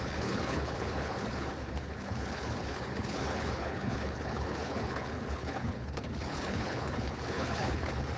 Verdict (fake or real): fake